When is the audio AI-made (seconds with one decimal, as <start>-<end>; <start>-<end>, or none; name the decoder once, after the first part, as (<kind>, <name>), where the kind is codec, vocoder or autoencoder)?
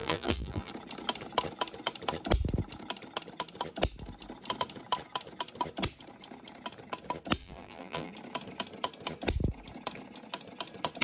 0.0-0.7 (vocoder, BigVGAN v2); 7.4-8.1